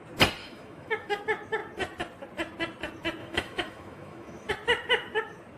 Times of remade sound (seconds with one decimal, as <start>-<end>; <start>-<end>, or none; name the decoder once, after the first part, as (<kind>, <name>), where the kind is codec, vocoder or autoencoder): 0.4-1.2 (autoencoder, DAC-VAE); 3.2-4.5